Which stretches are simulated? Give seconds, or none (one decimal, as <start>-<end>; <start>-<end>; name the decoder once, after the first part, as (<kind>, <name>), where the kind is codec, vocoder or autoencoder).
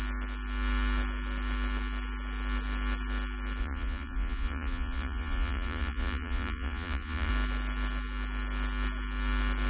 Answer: 3.6-7.3 (vocoder, Vocos)